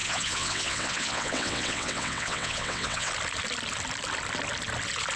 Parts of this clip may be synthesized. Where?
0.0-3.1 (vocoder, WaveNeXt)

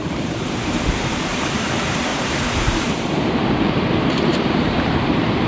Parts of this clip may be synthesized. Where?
0.0-1.2 (vocoder, BigVGAN v2); 2.1-5.5

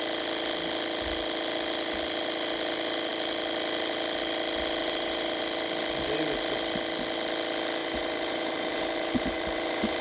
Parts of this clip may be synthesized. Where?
4.8-5.4 (vocoder, BigVGAN v2); 7.8-10.0

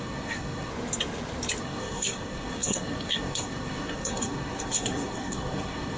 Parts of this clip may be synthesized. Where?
0.0-0.7 (codec, SNAC); 1.6-6.0